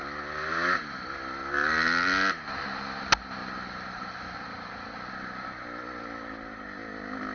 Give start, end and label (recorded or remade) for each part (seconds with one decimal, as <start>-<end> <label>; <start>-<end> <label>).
0.0-7.3 recorded